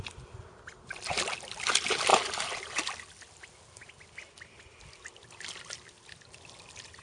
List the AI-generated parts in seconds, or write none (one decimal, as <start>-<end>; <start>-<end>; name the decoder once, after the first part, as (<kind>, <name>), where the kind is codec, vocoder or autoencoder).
none